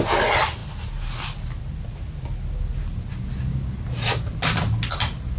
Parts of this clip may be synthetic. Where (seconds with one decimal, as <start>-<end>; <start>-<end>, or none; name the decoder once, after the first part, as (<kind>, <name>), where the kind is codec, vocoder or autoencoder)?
none